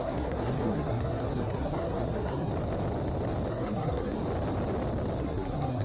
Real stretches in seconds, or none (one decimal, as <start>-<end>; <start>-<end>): 2.5-3.5; 4.2-5.2